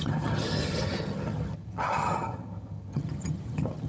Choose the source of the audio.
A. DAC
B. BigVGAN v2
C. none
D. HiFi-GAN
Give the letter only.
D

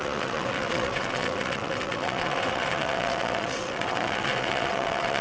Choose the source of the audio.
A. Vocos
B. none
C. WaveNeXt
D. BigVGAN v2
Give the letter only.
C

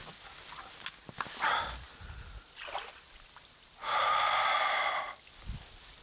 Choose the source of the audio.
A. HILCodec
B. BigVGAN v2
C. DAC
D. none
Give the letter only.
D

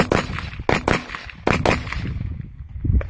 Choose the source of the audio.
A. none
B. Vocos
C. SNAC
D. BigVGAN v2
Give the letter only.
A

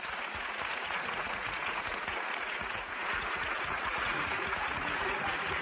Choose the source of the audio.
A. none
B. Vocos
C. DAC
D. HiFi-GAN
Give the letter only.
B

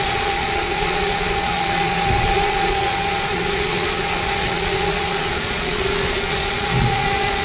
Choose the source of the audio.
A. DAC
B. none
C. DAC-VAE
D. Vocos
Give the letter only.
D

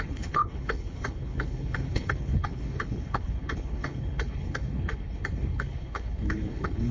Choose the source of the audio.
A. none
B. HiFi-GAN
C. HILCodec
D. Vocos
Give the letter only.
C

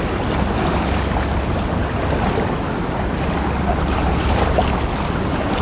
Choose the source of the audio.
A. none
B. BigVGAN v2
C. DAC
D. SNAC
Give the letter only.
A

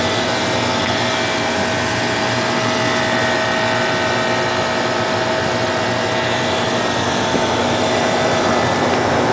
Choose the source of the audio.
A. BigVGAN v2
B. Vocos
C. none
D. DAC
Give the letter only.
C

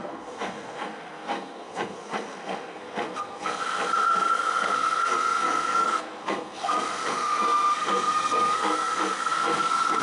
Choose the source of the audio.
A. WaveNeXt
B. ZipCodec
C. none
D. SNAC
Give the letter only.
D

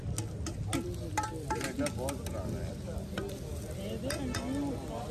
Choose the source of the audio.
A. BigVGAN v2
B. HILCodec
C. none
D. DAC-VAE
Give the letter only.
C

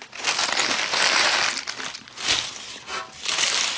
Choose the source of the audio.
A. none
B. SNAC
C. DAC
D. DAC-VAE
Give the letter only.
A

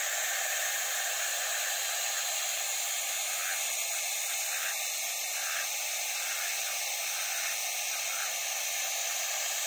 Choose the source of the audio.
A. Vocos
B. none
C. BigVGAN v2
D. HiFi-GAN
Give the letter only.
B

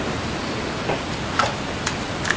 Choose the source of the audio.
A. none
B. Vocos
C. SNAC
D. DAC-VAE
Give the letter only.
A